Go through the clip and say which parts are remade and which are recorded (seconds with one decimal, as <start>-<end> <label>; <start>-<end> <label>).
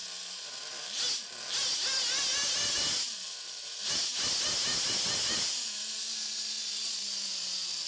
0.0-7.9 recorded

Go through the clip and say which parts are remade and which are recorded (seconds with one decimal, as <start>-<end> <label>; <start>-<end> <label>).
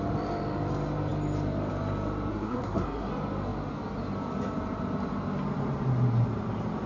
0.0-2.3 recorded; 2.3-3.1 remade; 3.1-6.9 recorded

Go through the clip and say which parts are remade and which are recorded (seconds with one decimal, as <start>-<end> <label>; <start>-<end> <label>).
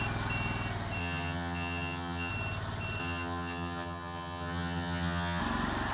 0.0-1.0 recorded; 1.0-2.3 remade; 2.3-3.0 recorded; 3.0-5.4 remade; 5.4-5.9 recorded